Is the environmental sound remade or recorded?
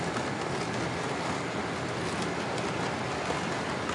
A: recorded